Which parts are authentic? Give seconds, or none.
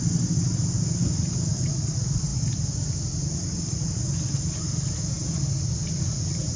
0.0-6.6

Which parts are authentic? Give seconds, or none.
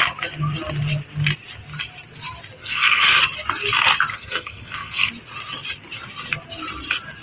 0.0-2.6; 3.2-4.1; 5.1-7.2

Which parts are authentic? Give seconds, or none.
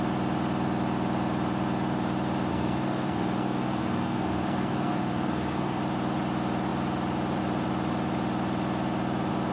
0.0-2.5; 5.8-9.5